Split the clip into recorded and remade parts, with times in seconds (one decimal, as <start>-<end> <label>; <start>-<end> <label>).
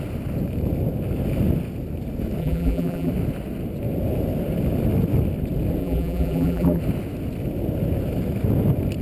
0.0-2.4 recorded; 2.4-3.1 remade; 3.1-5.8 recorded; 5.8-6.8 remade; 6.8-9.0 recorded